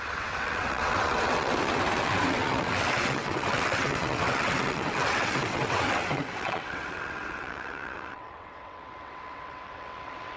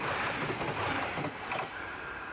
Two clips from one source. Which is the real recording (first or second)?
second